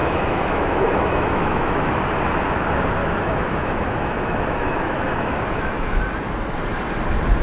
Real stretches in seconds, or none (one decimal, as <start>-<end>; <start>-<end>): 1.9-3.0; 6.0-7.4

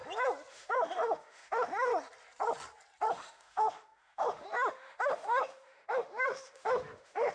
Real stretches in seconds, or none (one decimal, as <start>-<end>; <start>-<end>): 0.0-0.5; 1.9-3.1